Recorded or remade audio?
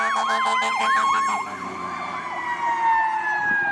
recorded